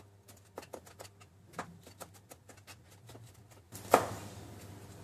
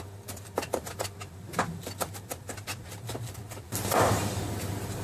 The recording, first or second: first